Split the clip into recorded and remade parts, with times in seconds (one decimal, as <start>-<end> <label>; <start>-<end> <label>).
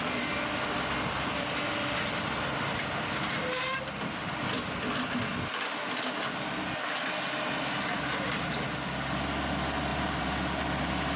0.0-9.9 recorded; 9.9-10.6 remade; 10.6-11.2 recorded